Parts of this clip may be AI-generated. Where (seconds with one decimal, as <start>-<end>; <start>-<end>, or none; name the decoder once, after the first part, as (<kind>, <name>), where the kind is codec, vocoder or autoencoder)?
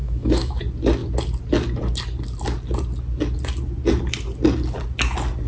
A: 0.0-0.6 (autoencoder, DAC-VAE)